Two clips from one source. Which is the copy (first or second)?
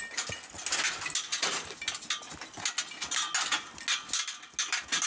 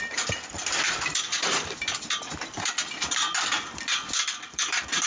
second